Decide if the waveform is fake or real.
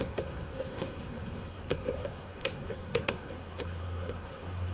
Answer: fake